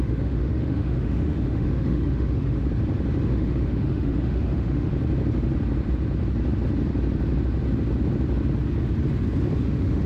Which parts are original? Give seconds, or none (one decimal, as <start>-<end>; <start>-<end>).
2.6-3.2; 4.9-9.6

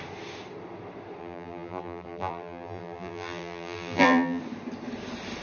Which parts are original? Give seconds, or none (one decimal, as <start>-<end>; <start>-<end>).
0.0-1.2; 4.4-5.4